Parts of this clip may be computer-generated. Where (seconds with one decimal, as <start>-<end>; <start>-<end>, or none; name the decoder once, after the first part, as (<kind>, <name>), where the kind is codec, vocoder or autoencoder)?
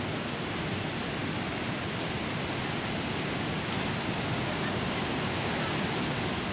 none